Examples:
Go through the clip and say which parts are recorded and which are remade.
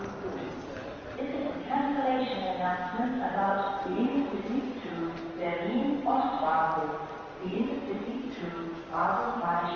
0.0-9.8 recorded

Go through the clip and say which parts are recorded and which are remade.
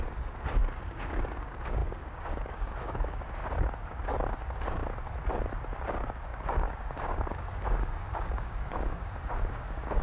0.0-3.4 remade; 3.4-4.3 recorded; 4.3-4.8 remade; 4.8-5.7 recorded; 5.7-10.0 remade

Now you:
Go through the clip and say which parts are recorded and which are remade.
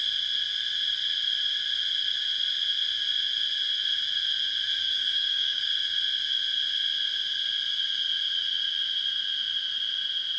0.0-4.7 recorded; 4.7-5.7 remade; 5.7-10.4 recorded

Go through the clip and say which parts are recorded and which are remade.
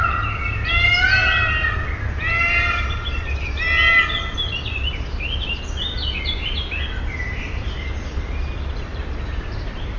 0.0-10.0 recorded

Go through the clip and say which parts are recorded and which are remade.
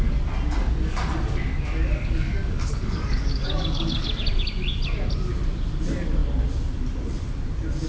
0.0-0.6 recorded; 0.6-4.1 remade; 4.1-7.9 recorded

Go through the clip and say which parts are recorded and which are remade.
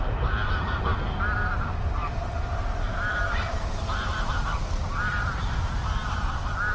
0.0-6.7 recorded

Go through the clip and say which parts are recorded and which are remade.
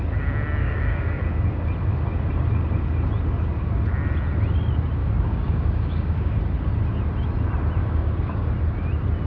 0.0-0.6 recorded; 0.6-1.2 remade; 1.2-5.0 recorded; 5.0-6.4 remade; 6.4-7.8 recorded; 7.8-8.5 remade; 8.5-9.3 recorded